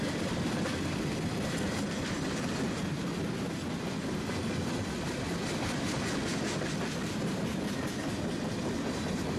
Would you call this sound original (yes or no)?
yes